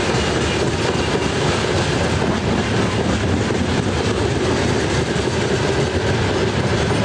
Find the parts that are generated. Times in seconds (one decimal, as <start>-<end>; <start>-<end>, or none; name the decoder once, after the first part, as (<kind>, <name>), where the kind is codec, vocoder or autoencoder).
none